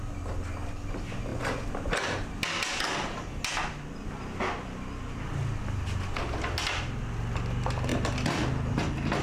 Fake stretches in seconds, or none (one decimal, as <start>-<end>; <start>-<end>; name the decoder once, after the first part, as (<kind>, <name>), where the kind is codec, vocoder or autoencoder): none